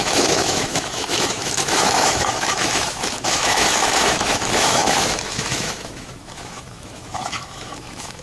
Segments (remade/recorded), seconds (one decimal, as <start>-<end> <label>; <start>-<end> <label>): 0.0-8.2 remade